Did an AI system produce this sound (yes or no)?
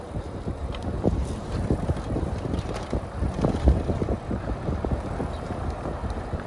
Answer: yes